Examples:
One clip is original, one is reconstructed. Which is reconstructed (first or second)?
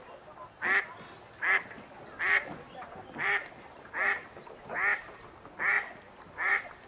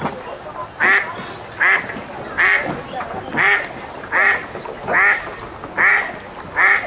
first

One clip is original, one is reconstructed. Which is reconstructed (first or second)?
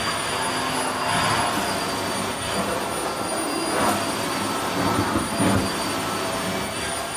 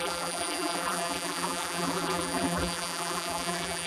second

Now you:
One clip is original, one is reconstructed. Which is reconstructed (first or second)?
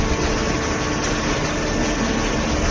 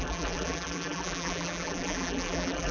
second